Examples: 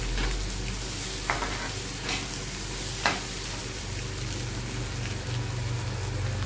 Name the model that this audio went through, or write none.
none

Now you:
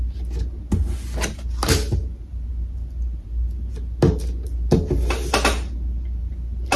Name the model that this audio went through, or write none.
none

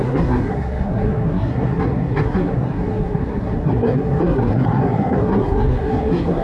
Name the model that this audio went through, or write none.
codec, SNAC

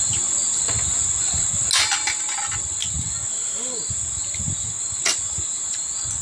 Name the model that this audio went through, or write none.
none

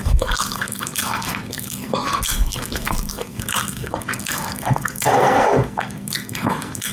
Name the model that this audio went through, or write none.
codec, SNAC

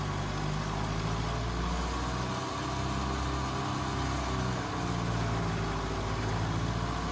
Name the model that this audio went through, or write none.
none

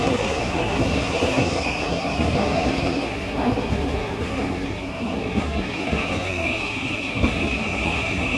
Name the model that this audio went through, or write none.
codec, SNAC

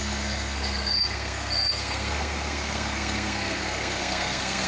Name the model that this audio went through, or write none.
codec, SNAC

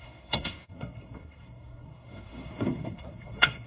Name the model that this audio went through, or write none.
codec, SNAC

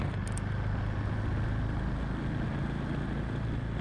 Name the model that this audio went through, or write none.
none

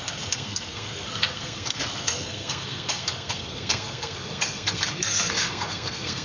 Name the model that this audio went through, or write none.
codec, SNAC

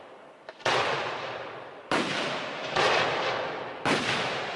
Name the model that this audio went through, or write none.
none